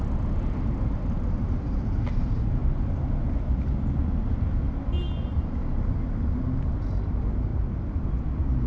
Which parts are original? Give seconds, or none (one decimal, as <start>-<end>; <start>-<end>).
0.0-8.7